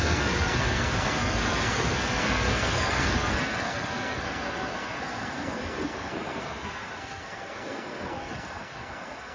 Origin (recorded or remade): remade